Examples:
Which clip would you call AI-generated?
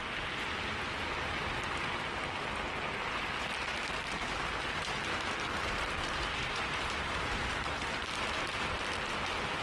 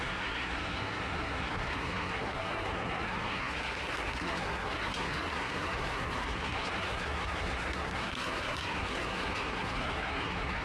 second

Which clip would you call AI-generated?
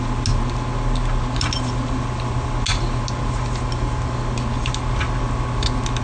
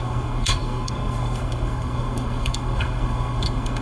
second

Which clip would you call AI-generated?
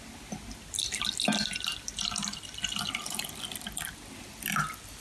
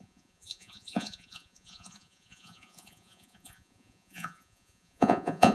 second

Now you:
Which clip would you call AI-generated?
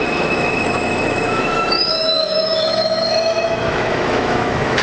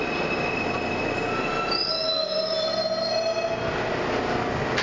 first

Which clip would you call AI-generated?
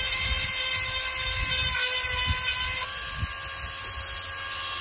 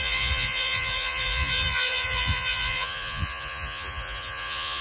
second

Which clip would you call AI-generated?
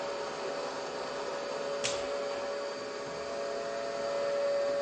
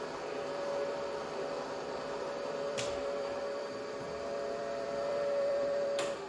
second